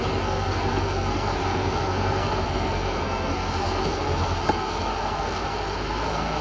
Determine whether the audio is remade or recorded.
remade